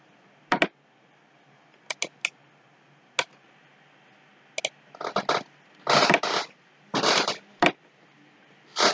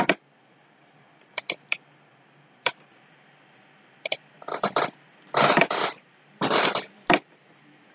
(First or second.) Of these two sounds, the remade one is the second